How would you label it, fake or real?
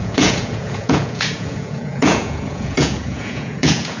fake